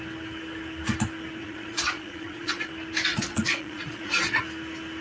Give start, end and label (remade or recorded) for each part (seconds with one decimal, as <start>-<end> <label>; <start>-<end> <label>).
0.0-1.4 recorded; 1.4-2.7 remade; 2.7-3.1 recorded; 3.1-4.4 remade; 4.4-5.0 recorded